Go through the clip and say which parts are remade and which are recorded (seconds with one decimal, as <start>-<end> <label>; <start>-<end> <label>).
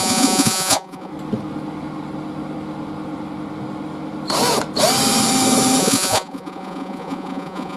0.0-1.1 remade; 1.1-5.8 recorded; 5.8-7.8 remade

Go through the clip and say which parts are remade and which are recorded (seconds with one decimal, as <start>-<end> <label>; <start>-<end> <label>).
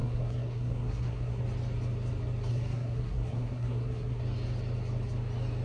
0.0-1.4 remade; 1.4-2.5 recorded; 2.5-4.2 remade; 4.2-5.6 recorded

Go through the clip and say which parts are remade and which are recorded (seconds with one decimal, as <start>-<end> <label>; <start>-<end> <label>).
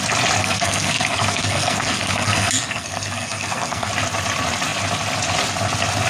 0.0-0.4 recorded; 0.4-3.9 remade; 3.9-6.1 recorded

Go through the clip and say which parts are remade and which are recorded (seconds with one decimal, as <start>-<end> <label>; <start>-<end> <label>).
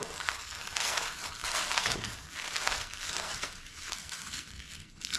0.0-5.2 remade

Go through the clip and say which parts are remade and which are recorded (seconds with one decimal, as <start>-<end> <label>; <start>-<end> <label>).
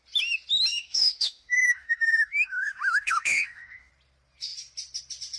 0.0-0.7 recorded; 0.7-3.9 remade; 3.9-5.4 recorded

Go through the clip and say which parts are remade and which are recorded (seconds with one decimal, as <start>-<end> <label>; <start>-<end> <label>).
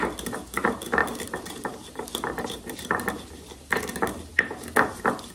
0.0-1.0 recorded; 1.0-4.2 remade; 4.2-5.3 recorded